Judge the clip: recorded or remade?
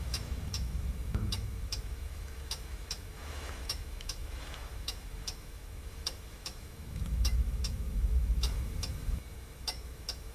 remade